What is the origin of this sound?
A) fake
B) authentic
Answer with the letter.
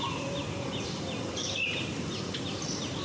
B